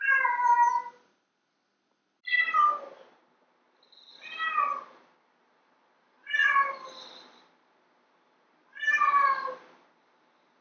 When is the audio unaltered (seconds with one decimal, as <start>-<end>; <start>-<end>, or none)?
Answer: 0.0-10.6